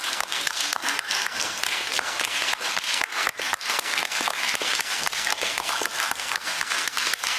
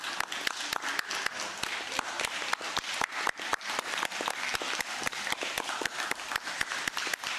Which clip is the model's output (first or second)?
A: first